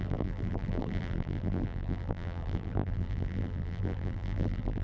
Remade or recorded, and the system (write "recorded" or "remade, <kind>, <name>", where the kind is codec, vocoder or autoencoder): remade, vocoder, BigVGAN v2